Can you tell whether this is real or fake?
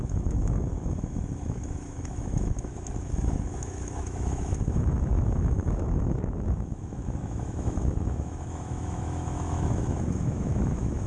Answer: fake